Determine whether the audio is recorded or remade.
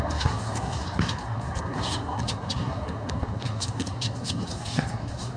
remade